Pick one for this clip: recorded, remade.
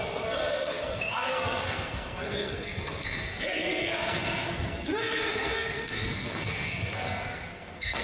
remade